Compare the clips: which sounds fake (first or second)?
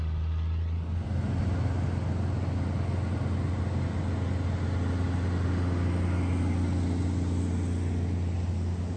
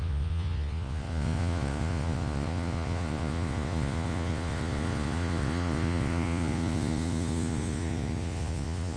second